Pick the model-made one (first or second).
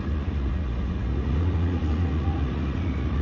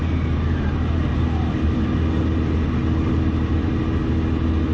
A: first